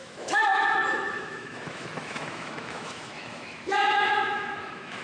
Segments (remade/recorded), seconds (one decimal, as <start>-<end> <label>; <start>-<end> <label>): 0.0-5.0 remade